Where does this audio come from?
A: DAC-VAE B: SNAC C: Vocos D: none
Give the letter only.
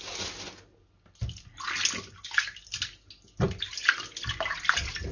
D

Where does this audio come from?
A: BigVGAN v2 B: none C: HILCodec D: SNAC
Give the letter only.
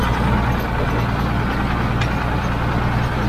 B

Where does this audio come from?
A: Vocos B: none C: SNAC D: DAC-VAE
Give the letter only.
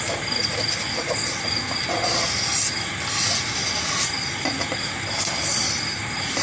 B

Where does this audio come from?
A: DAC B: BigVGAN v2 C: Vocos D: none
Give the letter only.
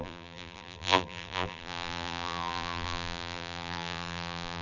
B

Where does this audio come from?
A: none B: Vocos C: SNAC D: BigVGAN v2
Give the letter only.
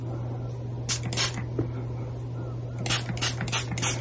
A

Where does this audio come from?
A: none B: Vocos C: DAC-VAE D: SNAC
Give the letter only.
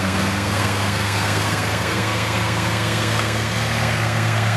D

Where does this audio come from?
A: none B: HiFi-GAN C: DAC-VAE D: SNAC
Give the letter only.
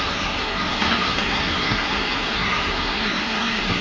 D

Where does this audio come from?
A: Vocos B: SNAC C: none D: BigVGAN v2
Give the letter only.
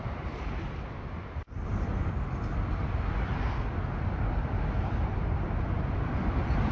C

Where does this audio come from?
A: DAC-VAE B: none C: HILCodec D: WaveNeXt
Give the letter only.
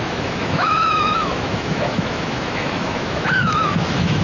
A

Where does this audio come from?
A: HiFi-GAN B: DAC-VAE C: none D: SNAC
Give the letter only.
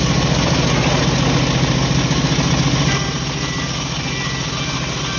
C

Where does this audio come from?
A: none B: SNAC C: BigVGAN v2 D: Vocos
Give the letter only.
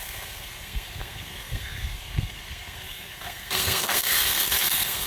B